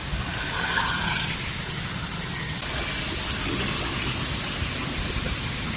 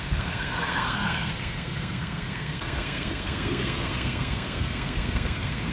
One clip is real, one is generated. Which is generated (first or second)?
second